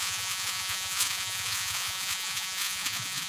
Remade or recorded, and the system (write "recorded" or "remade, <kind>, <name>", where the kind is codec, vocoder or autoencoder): remade, vocoder, Vocos